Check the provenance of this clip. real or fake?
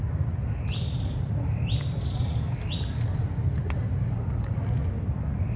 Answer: real